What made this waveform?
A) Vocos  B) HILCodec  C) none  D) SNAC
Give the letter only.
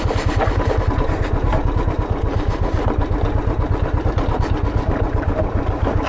C